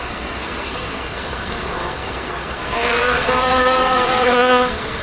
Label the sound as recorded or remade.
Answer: remade